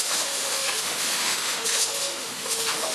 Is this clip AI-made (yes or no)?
yes